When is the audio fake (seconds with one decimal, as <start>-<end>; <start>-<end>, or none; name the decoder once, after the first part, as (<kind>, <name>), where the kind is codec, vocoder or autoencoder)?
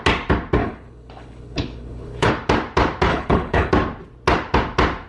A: 0.6-2.3 (codec, HILCodec); 3.1-3.7